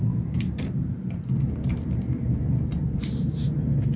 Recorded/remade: remade